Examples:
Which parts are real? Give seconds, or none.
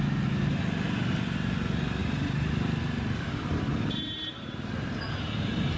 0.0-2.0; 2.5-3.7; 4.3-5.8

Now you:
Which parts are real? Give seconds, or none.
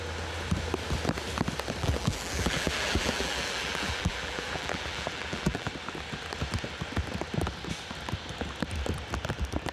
0.0-1.8; 5.7-9.7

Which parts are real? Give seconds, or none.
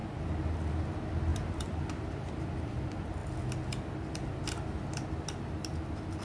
0.7-1.3; 2.8-6.2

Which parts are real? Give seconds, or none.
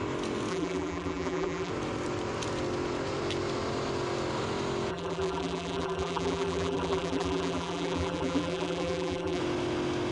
0.0-0.5; 1.7-4.9; 9.4-10.1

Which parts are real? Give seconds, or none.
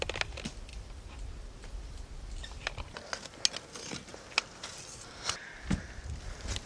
0.0-0.7; 1.5-4.1; 4.7-6.7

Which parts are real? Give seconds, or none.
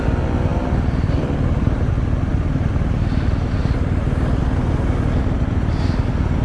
0.0-0.5; 1.9-2.3; 2.9-3.6; 4.4-6.4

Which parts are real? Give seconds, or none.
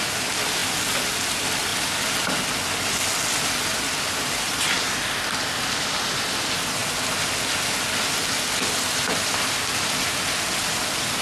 0.6-1.1; 1.7-3.6; 6.8-8.7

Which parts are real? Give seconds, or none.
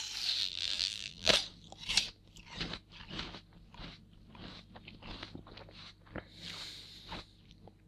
0.0-0.4; 1.3-7.9